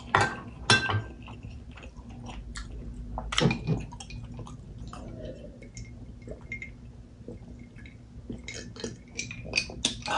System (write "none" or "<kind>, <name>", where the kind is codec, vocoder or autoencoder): none